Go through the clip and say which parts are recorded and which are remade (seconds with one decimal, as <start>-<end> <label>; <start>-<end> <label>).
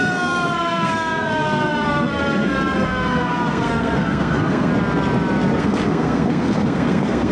0.0-4.7 remade; 4.7-5.6 recorded; 5.6-7.3 remade